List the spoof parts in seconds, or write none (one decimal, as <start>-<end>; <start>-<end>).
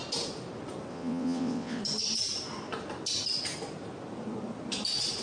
0.9-1.8